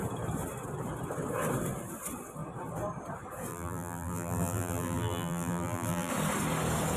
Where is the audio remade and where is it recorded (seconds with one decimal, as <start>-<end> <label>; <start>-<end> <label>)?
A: 0.0-3.5 recorded; 3.5-6.1 remade; 6.1-7.0 recorded